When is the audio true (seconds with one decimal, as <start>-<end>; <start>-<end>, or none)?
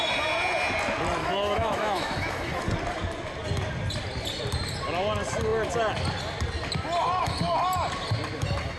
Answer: 0.0-1.2; 2.6-8.8